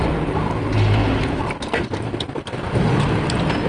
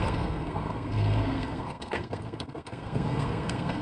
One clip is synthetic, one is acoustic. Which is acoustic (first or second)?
first